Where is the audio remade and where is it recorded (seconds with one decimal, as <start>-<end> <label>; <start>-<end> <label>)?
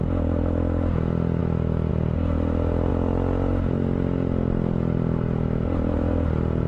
0.0-1.4 recorded; 1.4-1.9 remade; 1.9-6.7 recorded